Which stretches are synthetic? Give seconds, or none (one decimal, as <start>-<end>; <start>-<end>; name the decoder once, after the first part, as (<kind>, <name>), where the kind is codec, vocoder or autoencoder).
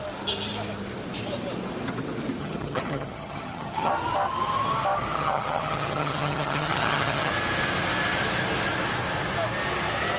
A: 2.4-3.9 (vocoder, HiFi-GAN); 5.1-7.3